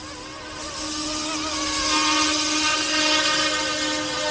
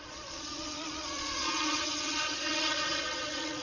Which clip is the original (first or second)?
first